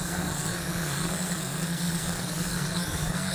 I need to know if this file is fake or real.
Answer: fake